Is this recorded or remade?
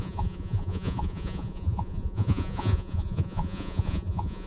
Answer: remade